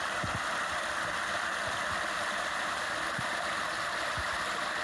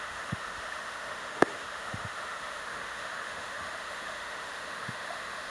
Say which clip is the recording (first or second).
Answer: first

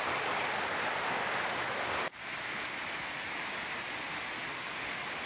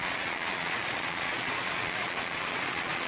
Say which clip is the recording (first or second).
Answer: first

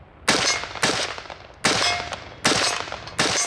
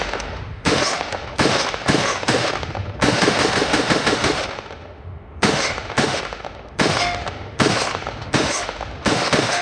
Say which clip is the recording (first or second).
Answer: first